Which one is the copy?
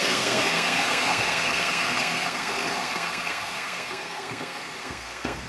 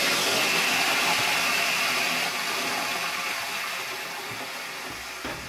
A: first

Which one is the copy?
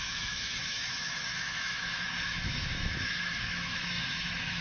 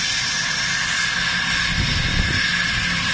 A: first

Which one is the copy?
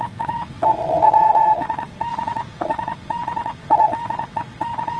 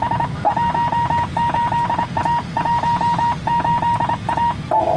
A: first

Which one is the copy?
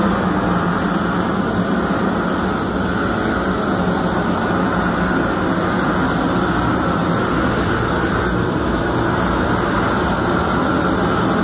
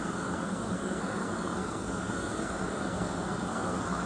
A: second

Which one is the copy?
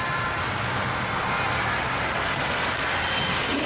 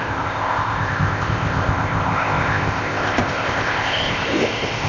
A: second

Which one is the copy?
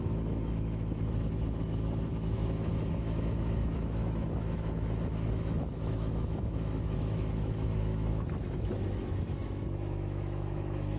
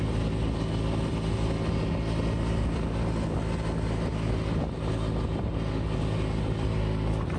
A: first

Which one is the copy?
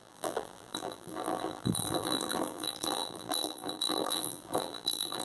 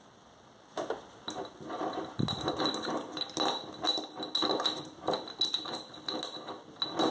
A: first